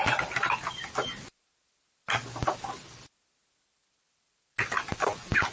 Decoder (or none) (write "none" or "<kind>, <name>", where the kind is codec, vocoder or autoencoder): none